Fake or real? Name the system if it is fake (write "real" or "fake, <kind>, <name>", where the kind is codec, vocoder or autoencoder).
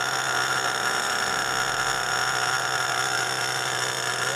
real